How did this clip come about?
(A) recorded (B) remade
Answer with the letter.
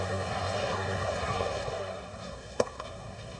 B